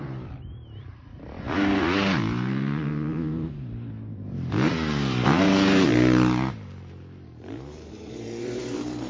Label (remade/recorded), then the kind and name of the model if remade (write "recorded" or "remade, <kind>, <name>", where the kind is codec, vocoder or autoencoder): remade, vocoder, BigVGAN v2